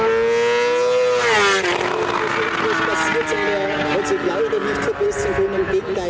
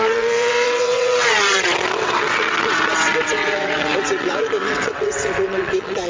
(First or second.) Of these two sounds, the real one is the first